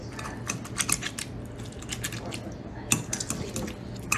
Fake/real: real